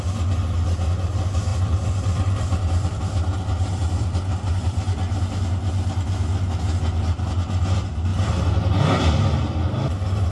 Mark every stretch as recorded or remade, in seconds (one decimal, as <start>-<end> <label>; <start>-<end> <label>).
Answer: 0.0-1.5 recorded; 1.5-5.4 remade; 5.4-8.1 recorded; 8.1-8.8 remade; 8.8-10.3 recorded